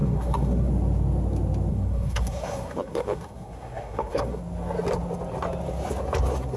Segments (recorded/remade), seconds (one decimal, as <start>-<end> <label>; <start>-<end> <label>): 0.0-0.7 remade; 0.7-1.7 recorded; 1.7-4.4 remade; 4.4-6.6 recorded